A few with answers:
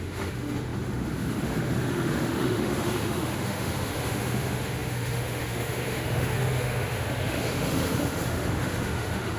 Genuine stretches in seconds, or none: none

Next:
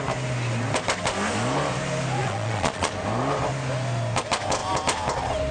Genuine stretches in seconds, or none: 0.0-2.2; 2.9-5.5

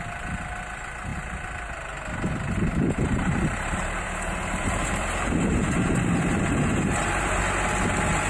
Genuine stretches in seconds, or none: 0.0-2.7; 7.0-8.3

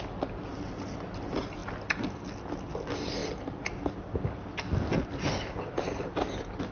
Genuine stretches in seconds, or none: 0.0-6.7

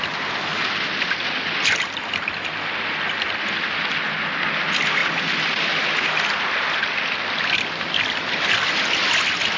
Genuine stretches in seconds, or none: 0.0-5.0; 7.5-9.6